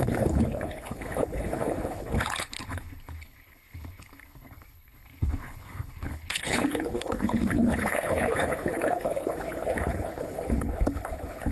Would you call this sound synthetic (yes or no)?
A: yes